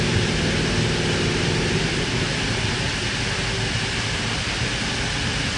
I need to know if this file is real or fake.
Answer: real